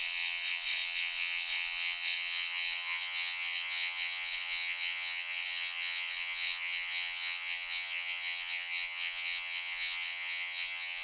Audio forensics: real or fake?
fake